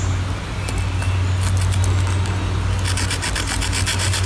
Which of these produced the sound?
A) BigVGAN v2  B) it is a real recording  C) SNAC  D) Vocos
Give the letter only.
B